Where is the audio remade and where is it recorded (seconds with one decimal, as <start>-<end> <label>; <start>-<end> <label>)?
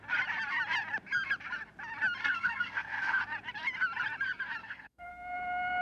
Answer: 0.0-2.2 recorded; 2.2-3.2 remade; 3.2-4.6 recorded; 4.6-5.1 remade; 5.1-5.8 recorded